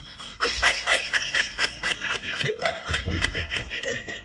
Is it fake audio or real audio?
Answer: fake